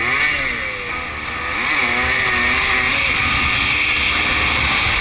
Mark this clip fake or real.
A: real